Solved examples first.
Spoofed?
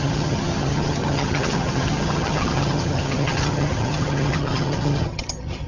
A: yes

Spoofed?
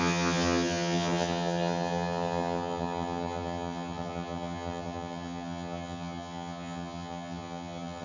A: yes